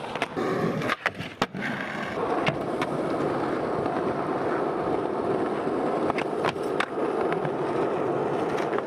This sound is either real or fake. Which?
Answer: real